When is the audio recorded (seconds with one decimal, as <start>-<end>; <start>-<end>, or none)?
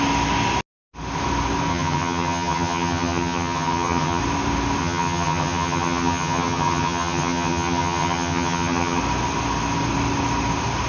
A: 0.0-1.7; 4.2-4.8; 9.0-10.9